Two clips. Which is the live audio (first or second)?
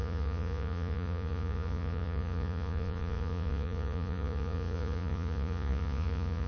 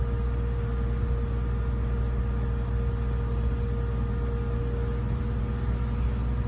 second